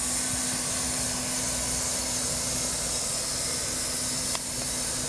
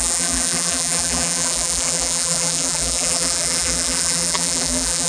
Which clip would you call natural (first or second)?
first